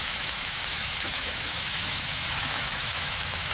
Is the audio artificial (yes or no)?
yes